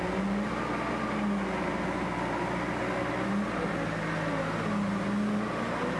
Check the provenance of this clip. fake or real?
real